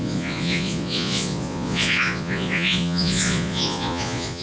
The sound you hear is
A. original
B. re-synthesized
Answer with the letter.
B